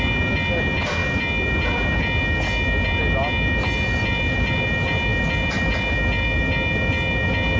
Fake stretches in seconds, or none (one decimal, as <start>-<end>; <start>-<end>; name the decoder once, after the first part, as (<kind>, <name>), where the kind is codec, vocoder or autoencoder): none